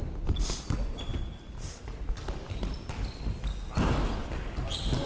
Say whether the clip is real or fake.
real